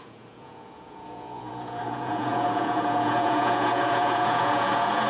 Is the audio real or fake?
fake